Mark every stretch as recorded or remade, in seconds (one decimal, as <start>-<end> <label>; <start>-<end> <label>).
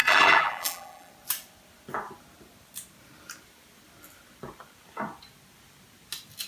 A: 0.0-1.1 remade; 1.1-6.5 recorded